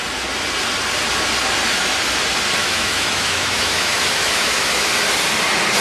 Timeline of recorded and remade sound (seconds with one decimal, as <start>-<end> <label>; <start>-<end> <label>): 0.0-2.6 recorded; 2.6-4.9 remade; 4.9-5.8 recorded